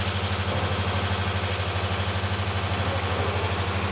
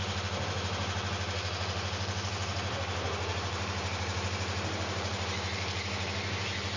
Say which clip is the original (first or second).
first